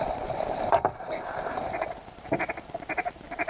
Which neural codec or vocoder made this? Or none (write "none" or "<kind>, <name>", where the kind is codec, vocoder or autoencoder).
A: vocoder, BigVGAN v2